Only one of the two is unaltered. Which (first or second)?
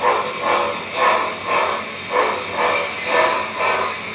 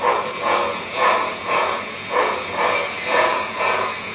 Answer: first